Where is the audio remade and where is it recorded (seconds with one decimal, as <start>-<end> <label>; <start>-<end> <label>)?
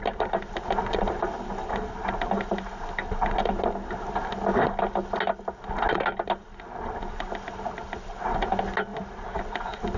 0.0-10.0 recorded